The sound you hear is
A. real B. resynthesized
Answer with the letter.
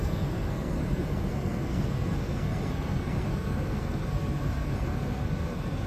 B